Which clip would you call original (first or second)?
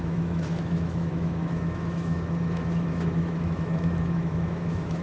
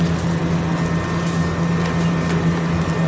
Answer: second